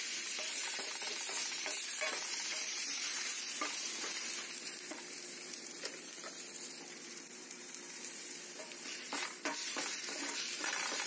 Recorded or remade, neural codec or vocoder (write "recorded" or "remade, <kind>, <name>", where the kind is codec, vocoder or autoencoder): remade, vocoder, BigVGAN v2